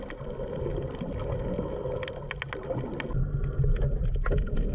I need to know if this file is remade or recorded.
recorded